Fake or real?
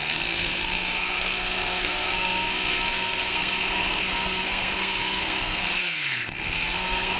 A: fake